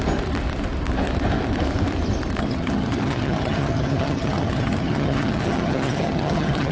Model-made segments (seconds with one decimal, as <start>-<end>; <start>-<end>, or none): 2.4-6.7